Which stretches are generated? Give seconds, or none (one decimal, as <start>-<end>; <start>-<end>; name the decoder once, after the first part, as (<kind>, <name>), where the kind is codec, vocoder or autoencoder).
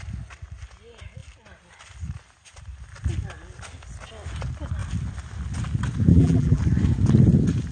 6.1-6.6 (vocoder, BigVGAN v2)